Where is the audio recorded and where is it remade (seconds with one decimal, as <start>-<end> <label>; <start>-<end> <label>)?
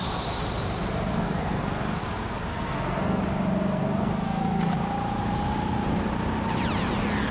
0.0-1.1 recorded; 1.1-1.8 remade; 1.8-2.5 recorded; 2.5-3.2 remade; 3.2-3.7 recorded; 3.7-4.6 remade; 4.6-7.3 recorded